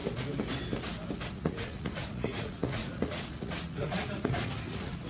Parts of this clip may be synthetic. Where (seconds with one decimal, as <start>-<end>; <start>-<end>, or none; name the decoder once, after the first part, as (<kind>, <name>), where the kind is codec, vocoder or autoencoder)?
1.3-5.1 (vocoder, Vocos)

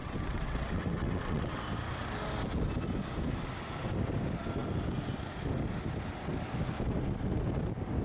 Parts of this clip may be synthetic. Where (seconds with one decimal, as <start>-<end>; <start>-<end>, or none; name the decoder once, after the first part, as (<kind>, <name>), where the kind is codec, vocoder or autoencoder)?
0.0-1.6 (vocoder, WaveNeXt)

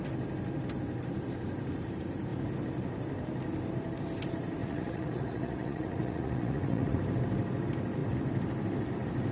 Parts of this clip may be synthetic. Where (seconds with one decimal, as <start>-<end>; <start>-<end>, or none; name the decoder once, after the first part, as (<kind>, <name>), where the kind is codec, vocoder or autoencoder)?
4.6-7.0 (vocoder, Vocos)

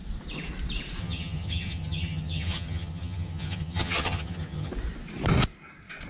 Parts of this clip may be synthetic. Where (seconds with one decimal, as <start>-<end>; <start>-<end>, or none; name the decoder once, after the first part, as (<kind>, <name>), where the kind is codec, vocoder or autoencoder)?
1.0-4.7 (vocoder, HiFi-GAN)

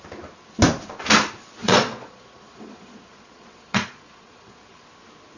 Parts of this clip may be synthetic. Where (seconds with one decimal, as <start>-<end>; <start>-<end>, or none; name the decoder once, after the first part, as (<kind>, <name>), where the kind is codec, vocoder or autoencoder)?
1.6-4.8 (vocoder, Vocos)

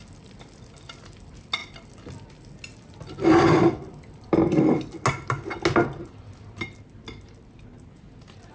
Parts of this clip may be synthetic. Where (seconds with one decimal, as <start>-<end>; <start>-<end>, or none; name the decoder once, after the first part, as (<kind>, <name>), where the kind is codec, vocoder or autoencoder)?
none

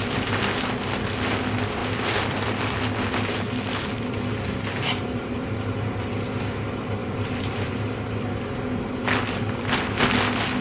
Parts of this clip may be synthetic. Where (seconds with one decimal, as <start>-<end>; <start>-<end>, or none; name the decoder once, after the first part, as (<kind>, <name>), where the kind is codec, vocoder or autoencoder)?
7.0-7.7 (vocoder, BigVGAN v2)

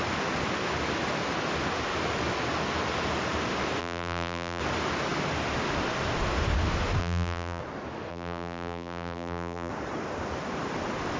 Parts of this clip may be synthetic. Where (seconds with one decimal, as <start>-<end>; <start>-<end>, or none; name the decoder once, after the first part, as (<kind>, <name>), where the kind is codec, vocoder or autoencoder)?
3.8-4.6 (vocoder, BigVGAN v2); 7.0-7.6; 8.1-9.7